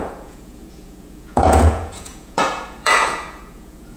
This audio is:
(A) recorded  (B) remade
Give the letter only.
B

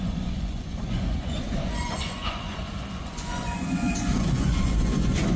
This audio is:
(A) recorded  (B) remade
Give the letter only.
B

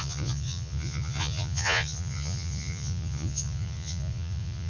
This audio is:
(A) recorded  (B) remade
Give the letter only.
B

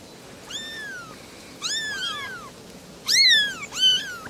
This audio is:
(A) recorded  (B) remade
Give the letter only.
A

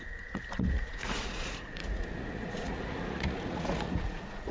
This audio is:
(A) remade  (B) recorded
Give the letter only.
A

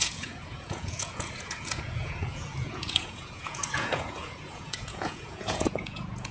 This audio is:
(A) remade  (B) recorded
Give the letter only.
A